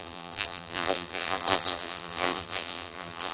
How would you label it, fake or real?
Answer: fake